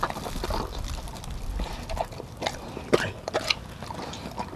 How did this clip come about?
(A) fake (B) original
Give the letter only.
B